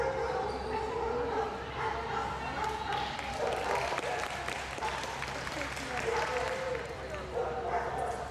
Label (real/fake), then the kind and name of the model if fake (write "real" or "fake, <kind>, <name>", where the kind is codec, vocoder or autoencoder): real